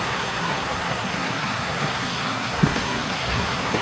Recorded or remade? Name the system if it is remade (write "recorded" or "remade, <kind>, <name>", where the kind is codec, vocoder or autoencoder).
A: remade, codec, SNAC